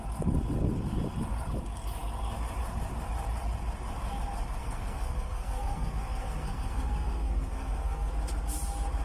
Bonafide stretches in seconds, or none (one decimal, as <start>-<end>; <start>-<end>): 0.0-4.6; 8.1-9.0